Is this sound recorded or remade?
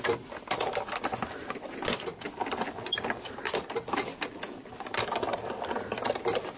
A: recorded